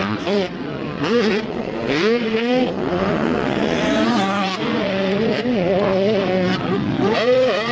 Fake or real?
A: fake